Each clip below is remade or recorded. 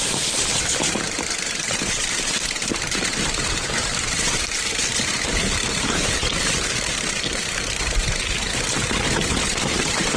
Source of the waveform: remade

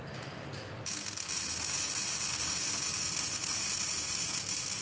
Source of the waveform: recorded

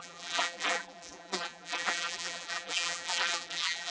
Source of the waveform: remade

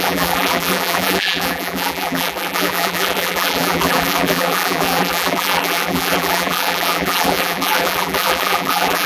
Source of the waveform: remade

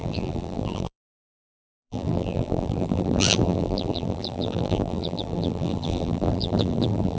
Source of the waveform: remade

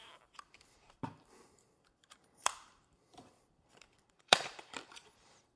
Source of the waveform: remade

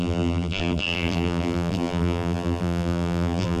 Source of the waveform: remade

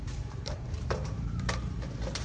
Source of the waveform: remade